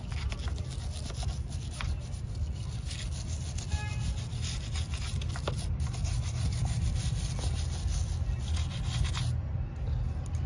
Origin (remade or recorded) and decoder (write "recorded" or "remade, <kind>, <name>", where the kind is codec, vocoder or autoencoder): recorded